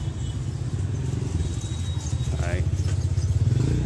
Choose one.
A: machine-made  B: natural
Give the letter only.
B